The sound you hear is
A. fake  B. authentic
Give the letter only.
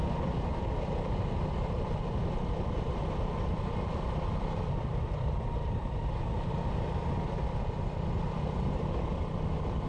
B